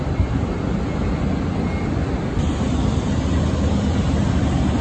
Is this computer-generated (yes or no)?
no